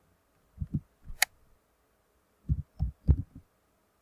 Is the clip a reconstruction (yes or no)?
no